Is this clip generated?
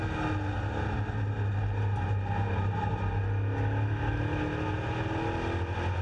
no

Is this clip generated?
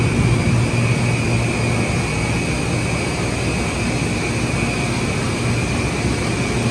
no